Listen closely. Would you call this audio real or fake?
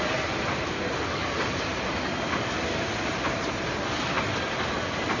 real